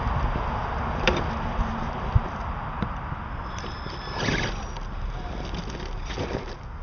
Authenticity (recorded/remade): recorded